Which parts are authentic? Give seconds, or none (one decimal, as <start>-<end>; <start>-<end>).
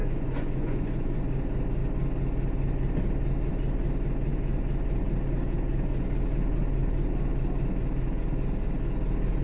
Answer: 1.2-9.4